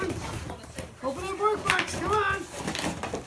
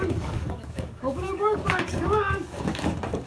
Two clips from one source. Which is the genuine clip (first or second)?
first